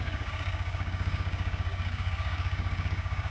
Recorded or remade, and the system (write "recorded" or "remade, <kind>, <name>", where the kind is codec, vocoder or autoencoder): remade, codec, DAC